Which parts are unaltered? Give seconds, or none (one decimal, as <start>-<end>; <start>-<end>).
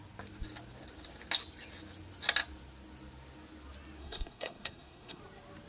0.0-4.0; 5.2-5.7